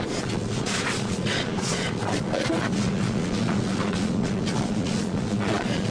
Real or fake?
fake